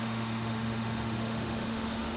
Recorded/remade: remade